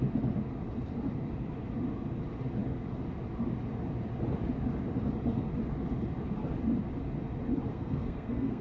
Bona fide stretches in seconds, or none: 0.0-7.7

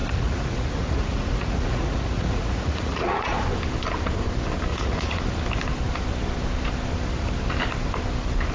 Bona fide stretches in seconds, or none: 3.5-4.7; 5.2-8.5

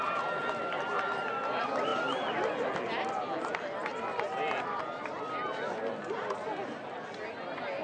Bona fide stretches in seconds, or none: 0.0-7.8

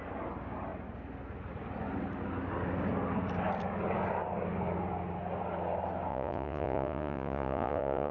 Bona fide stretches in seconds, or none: 0.0-6.1

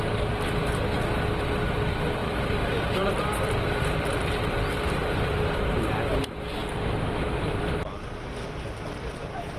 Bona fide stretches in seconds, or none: 0.0-2.2; 5.9-9.6

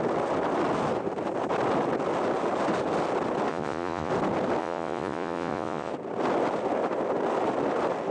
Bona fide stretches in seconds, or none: 0.0-3.5; 4.1-4.6; 5.9-8.1